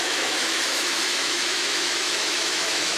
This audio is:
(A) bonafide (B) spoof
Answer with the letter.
B